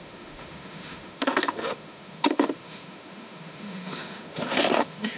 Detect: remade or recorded remade